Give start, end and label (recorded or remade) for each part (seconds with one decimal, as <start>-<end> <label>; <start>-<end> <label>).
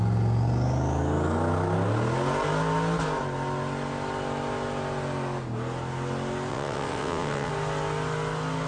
0.0-6.5 recorded; 6.5-7.5 remade; 7.5-8.7 recorded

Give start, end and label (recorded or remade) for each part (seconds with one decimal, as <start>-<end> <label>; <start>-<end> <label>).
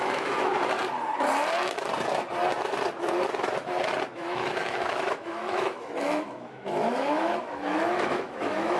0.0-0.5 remade; 0.5-4.1 recorded; 4.1-8.8 remade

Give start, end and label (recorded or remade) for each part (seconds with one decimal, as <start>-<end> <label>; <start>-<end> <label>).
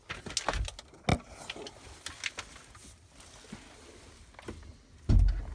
0.0-5.5 recorded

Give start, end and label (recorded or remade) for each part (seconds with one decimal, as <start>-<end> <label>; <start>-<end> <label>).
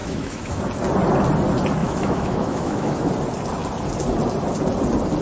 0.0-0.6 remade; 0.6-1.8 recorded; 1.8-3.1 remade; 3.1-5.2 recorded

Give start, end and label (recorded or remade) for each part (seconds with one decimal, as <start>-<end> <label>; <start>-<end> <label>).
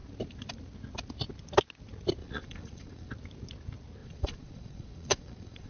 0.0-2.2 recorded; 2.2-3.1 remade; 3.1-4.0 recorded; 4.0-5.7 remade